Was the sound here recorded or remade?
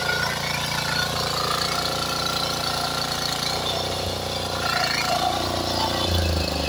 recorded